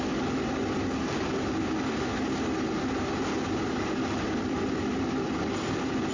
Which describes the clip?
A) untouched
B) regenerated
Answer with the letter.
A